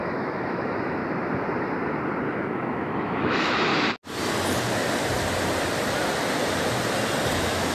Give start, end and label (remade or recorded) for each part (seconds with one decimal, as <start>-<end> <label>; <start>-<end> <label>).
0.0-1.0 remade; 1.0-2.3 recorded; 2.3-3.7 remade; 3.7-7.3 recorded; 7.3-7.7 remade